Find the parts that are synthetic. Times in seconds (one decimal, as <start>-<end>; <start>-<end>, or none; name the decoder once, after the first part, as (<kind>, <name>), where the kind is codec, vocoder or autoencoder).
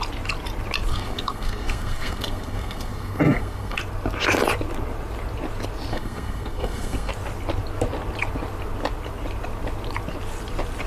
0.9-3.8 (codec, SNAC); 5.9-7.1